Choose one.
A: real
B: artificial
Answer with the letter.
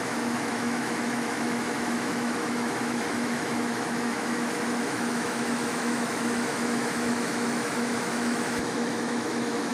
B